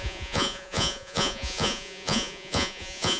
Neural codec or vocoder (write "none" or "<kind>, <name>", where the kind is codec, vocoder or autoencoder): vocoder, Vocos